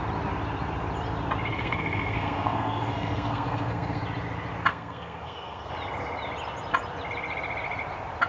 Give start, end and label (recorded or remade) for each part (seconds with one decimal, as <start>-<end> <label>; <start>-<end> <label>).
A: 0.0-1.5 recorded; 1.5-4.0 remade; 4.0-4.7 recorded; 4.7-5.7 remade; 5.7-8.3 recorded